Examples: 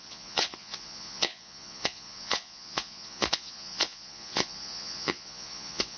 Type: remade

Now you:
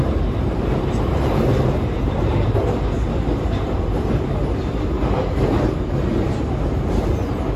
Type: remade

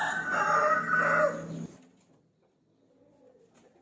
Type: recorded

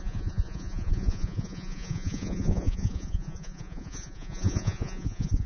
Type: remade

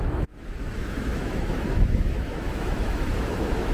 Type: remade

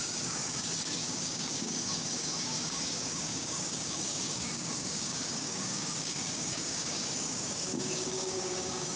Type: remade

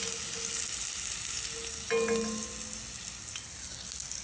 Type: recorded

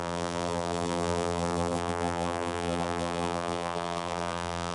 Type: remade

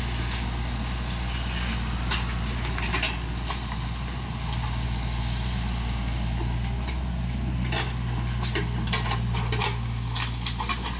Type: recorded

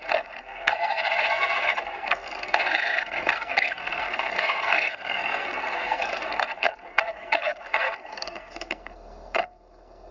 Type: remade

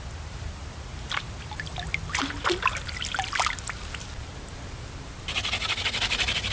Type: recorded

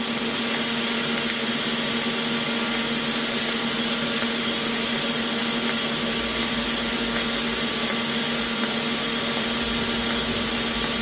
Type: recorded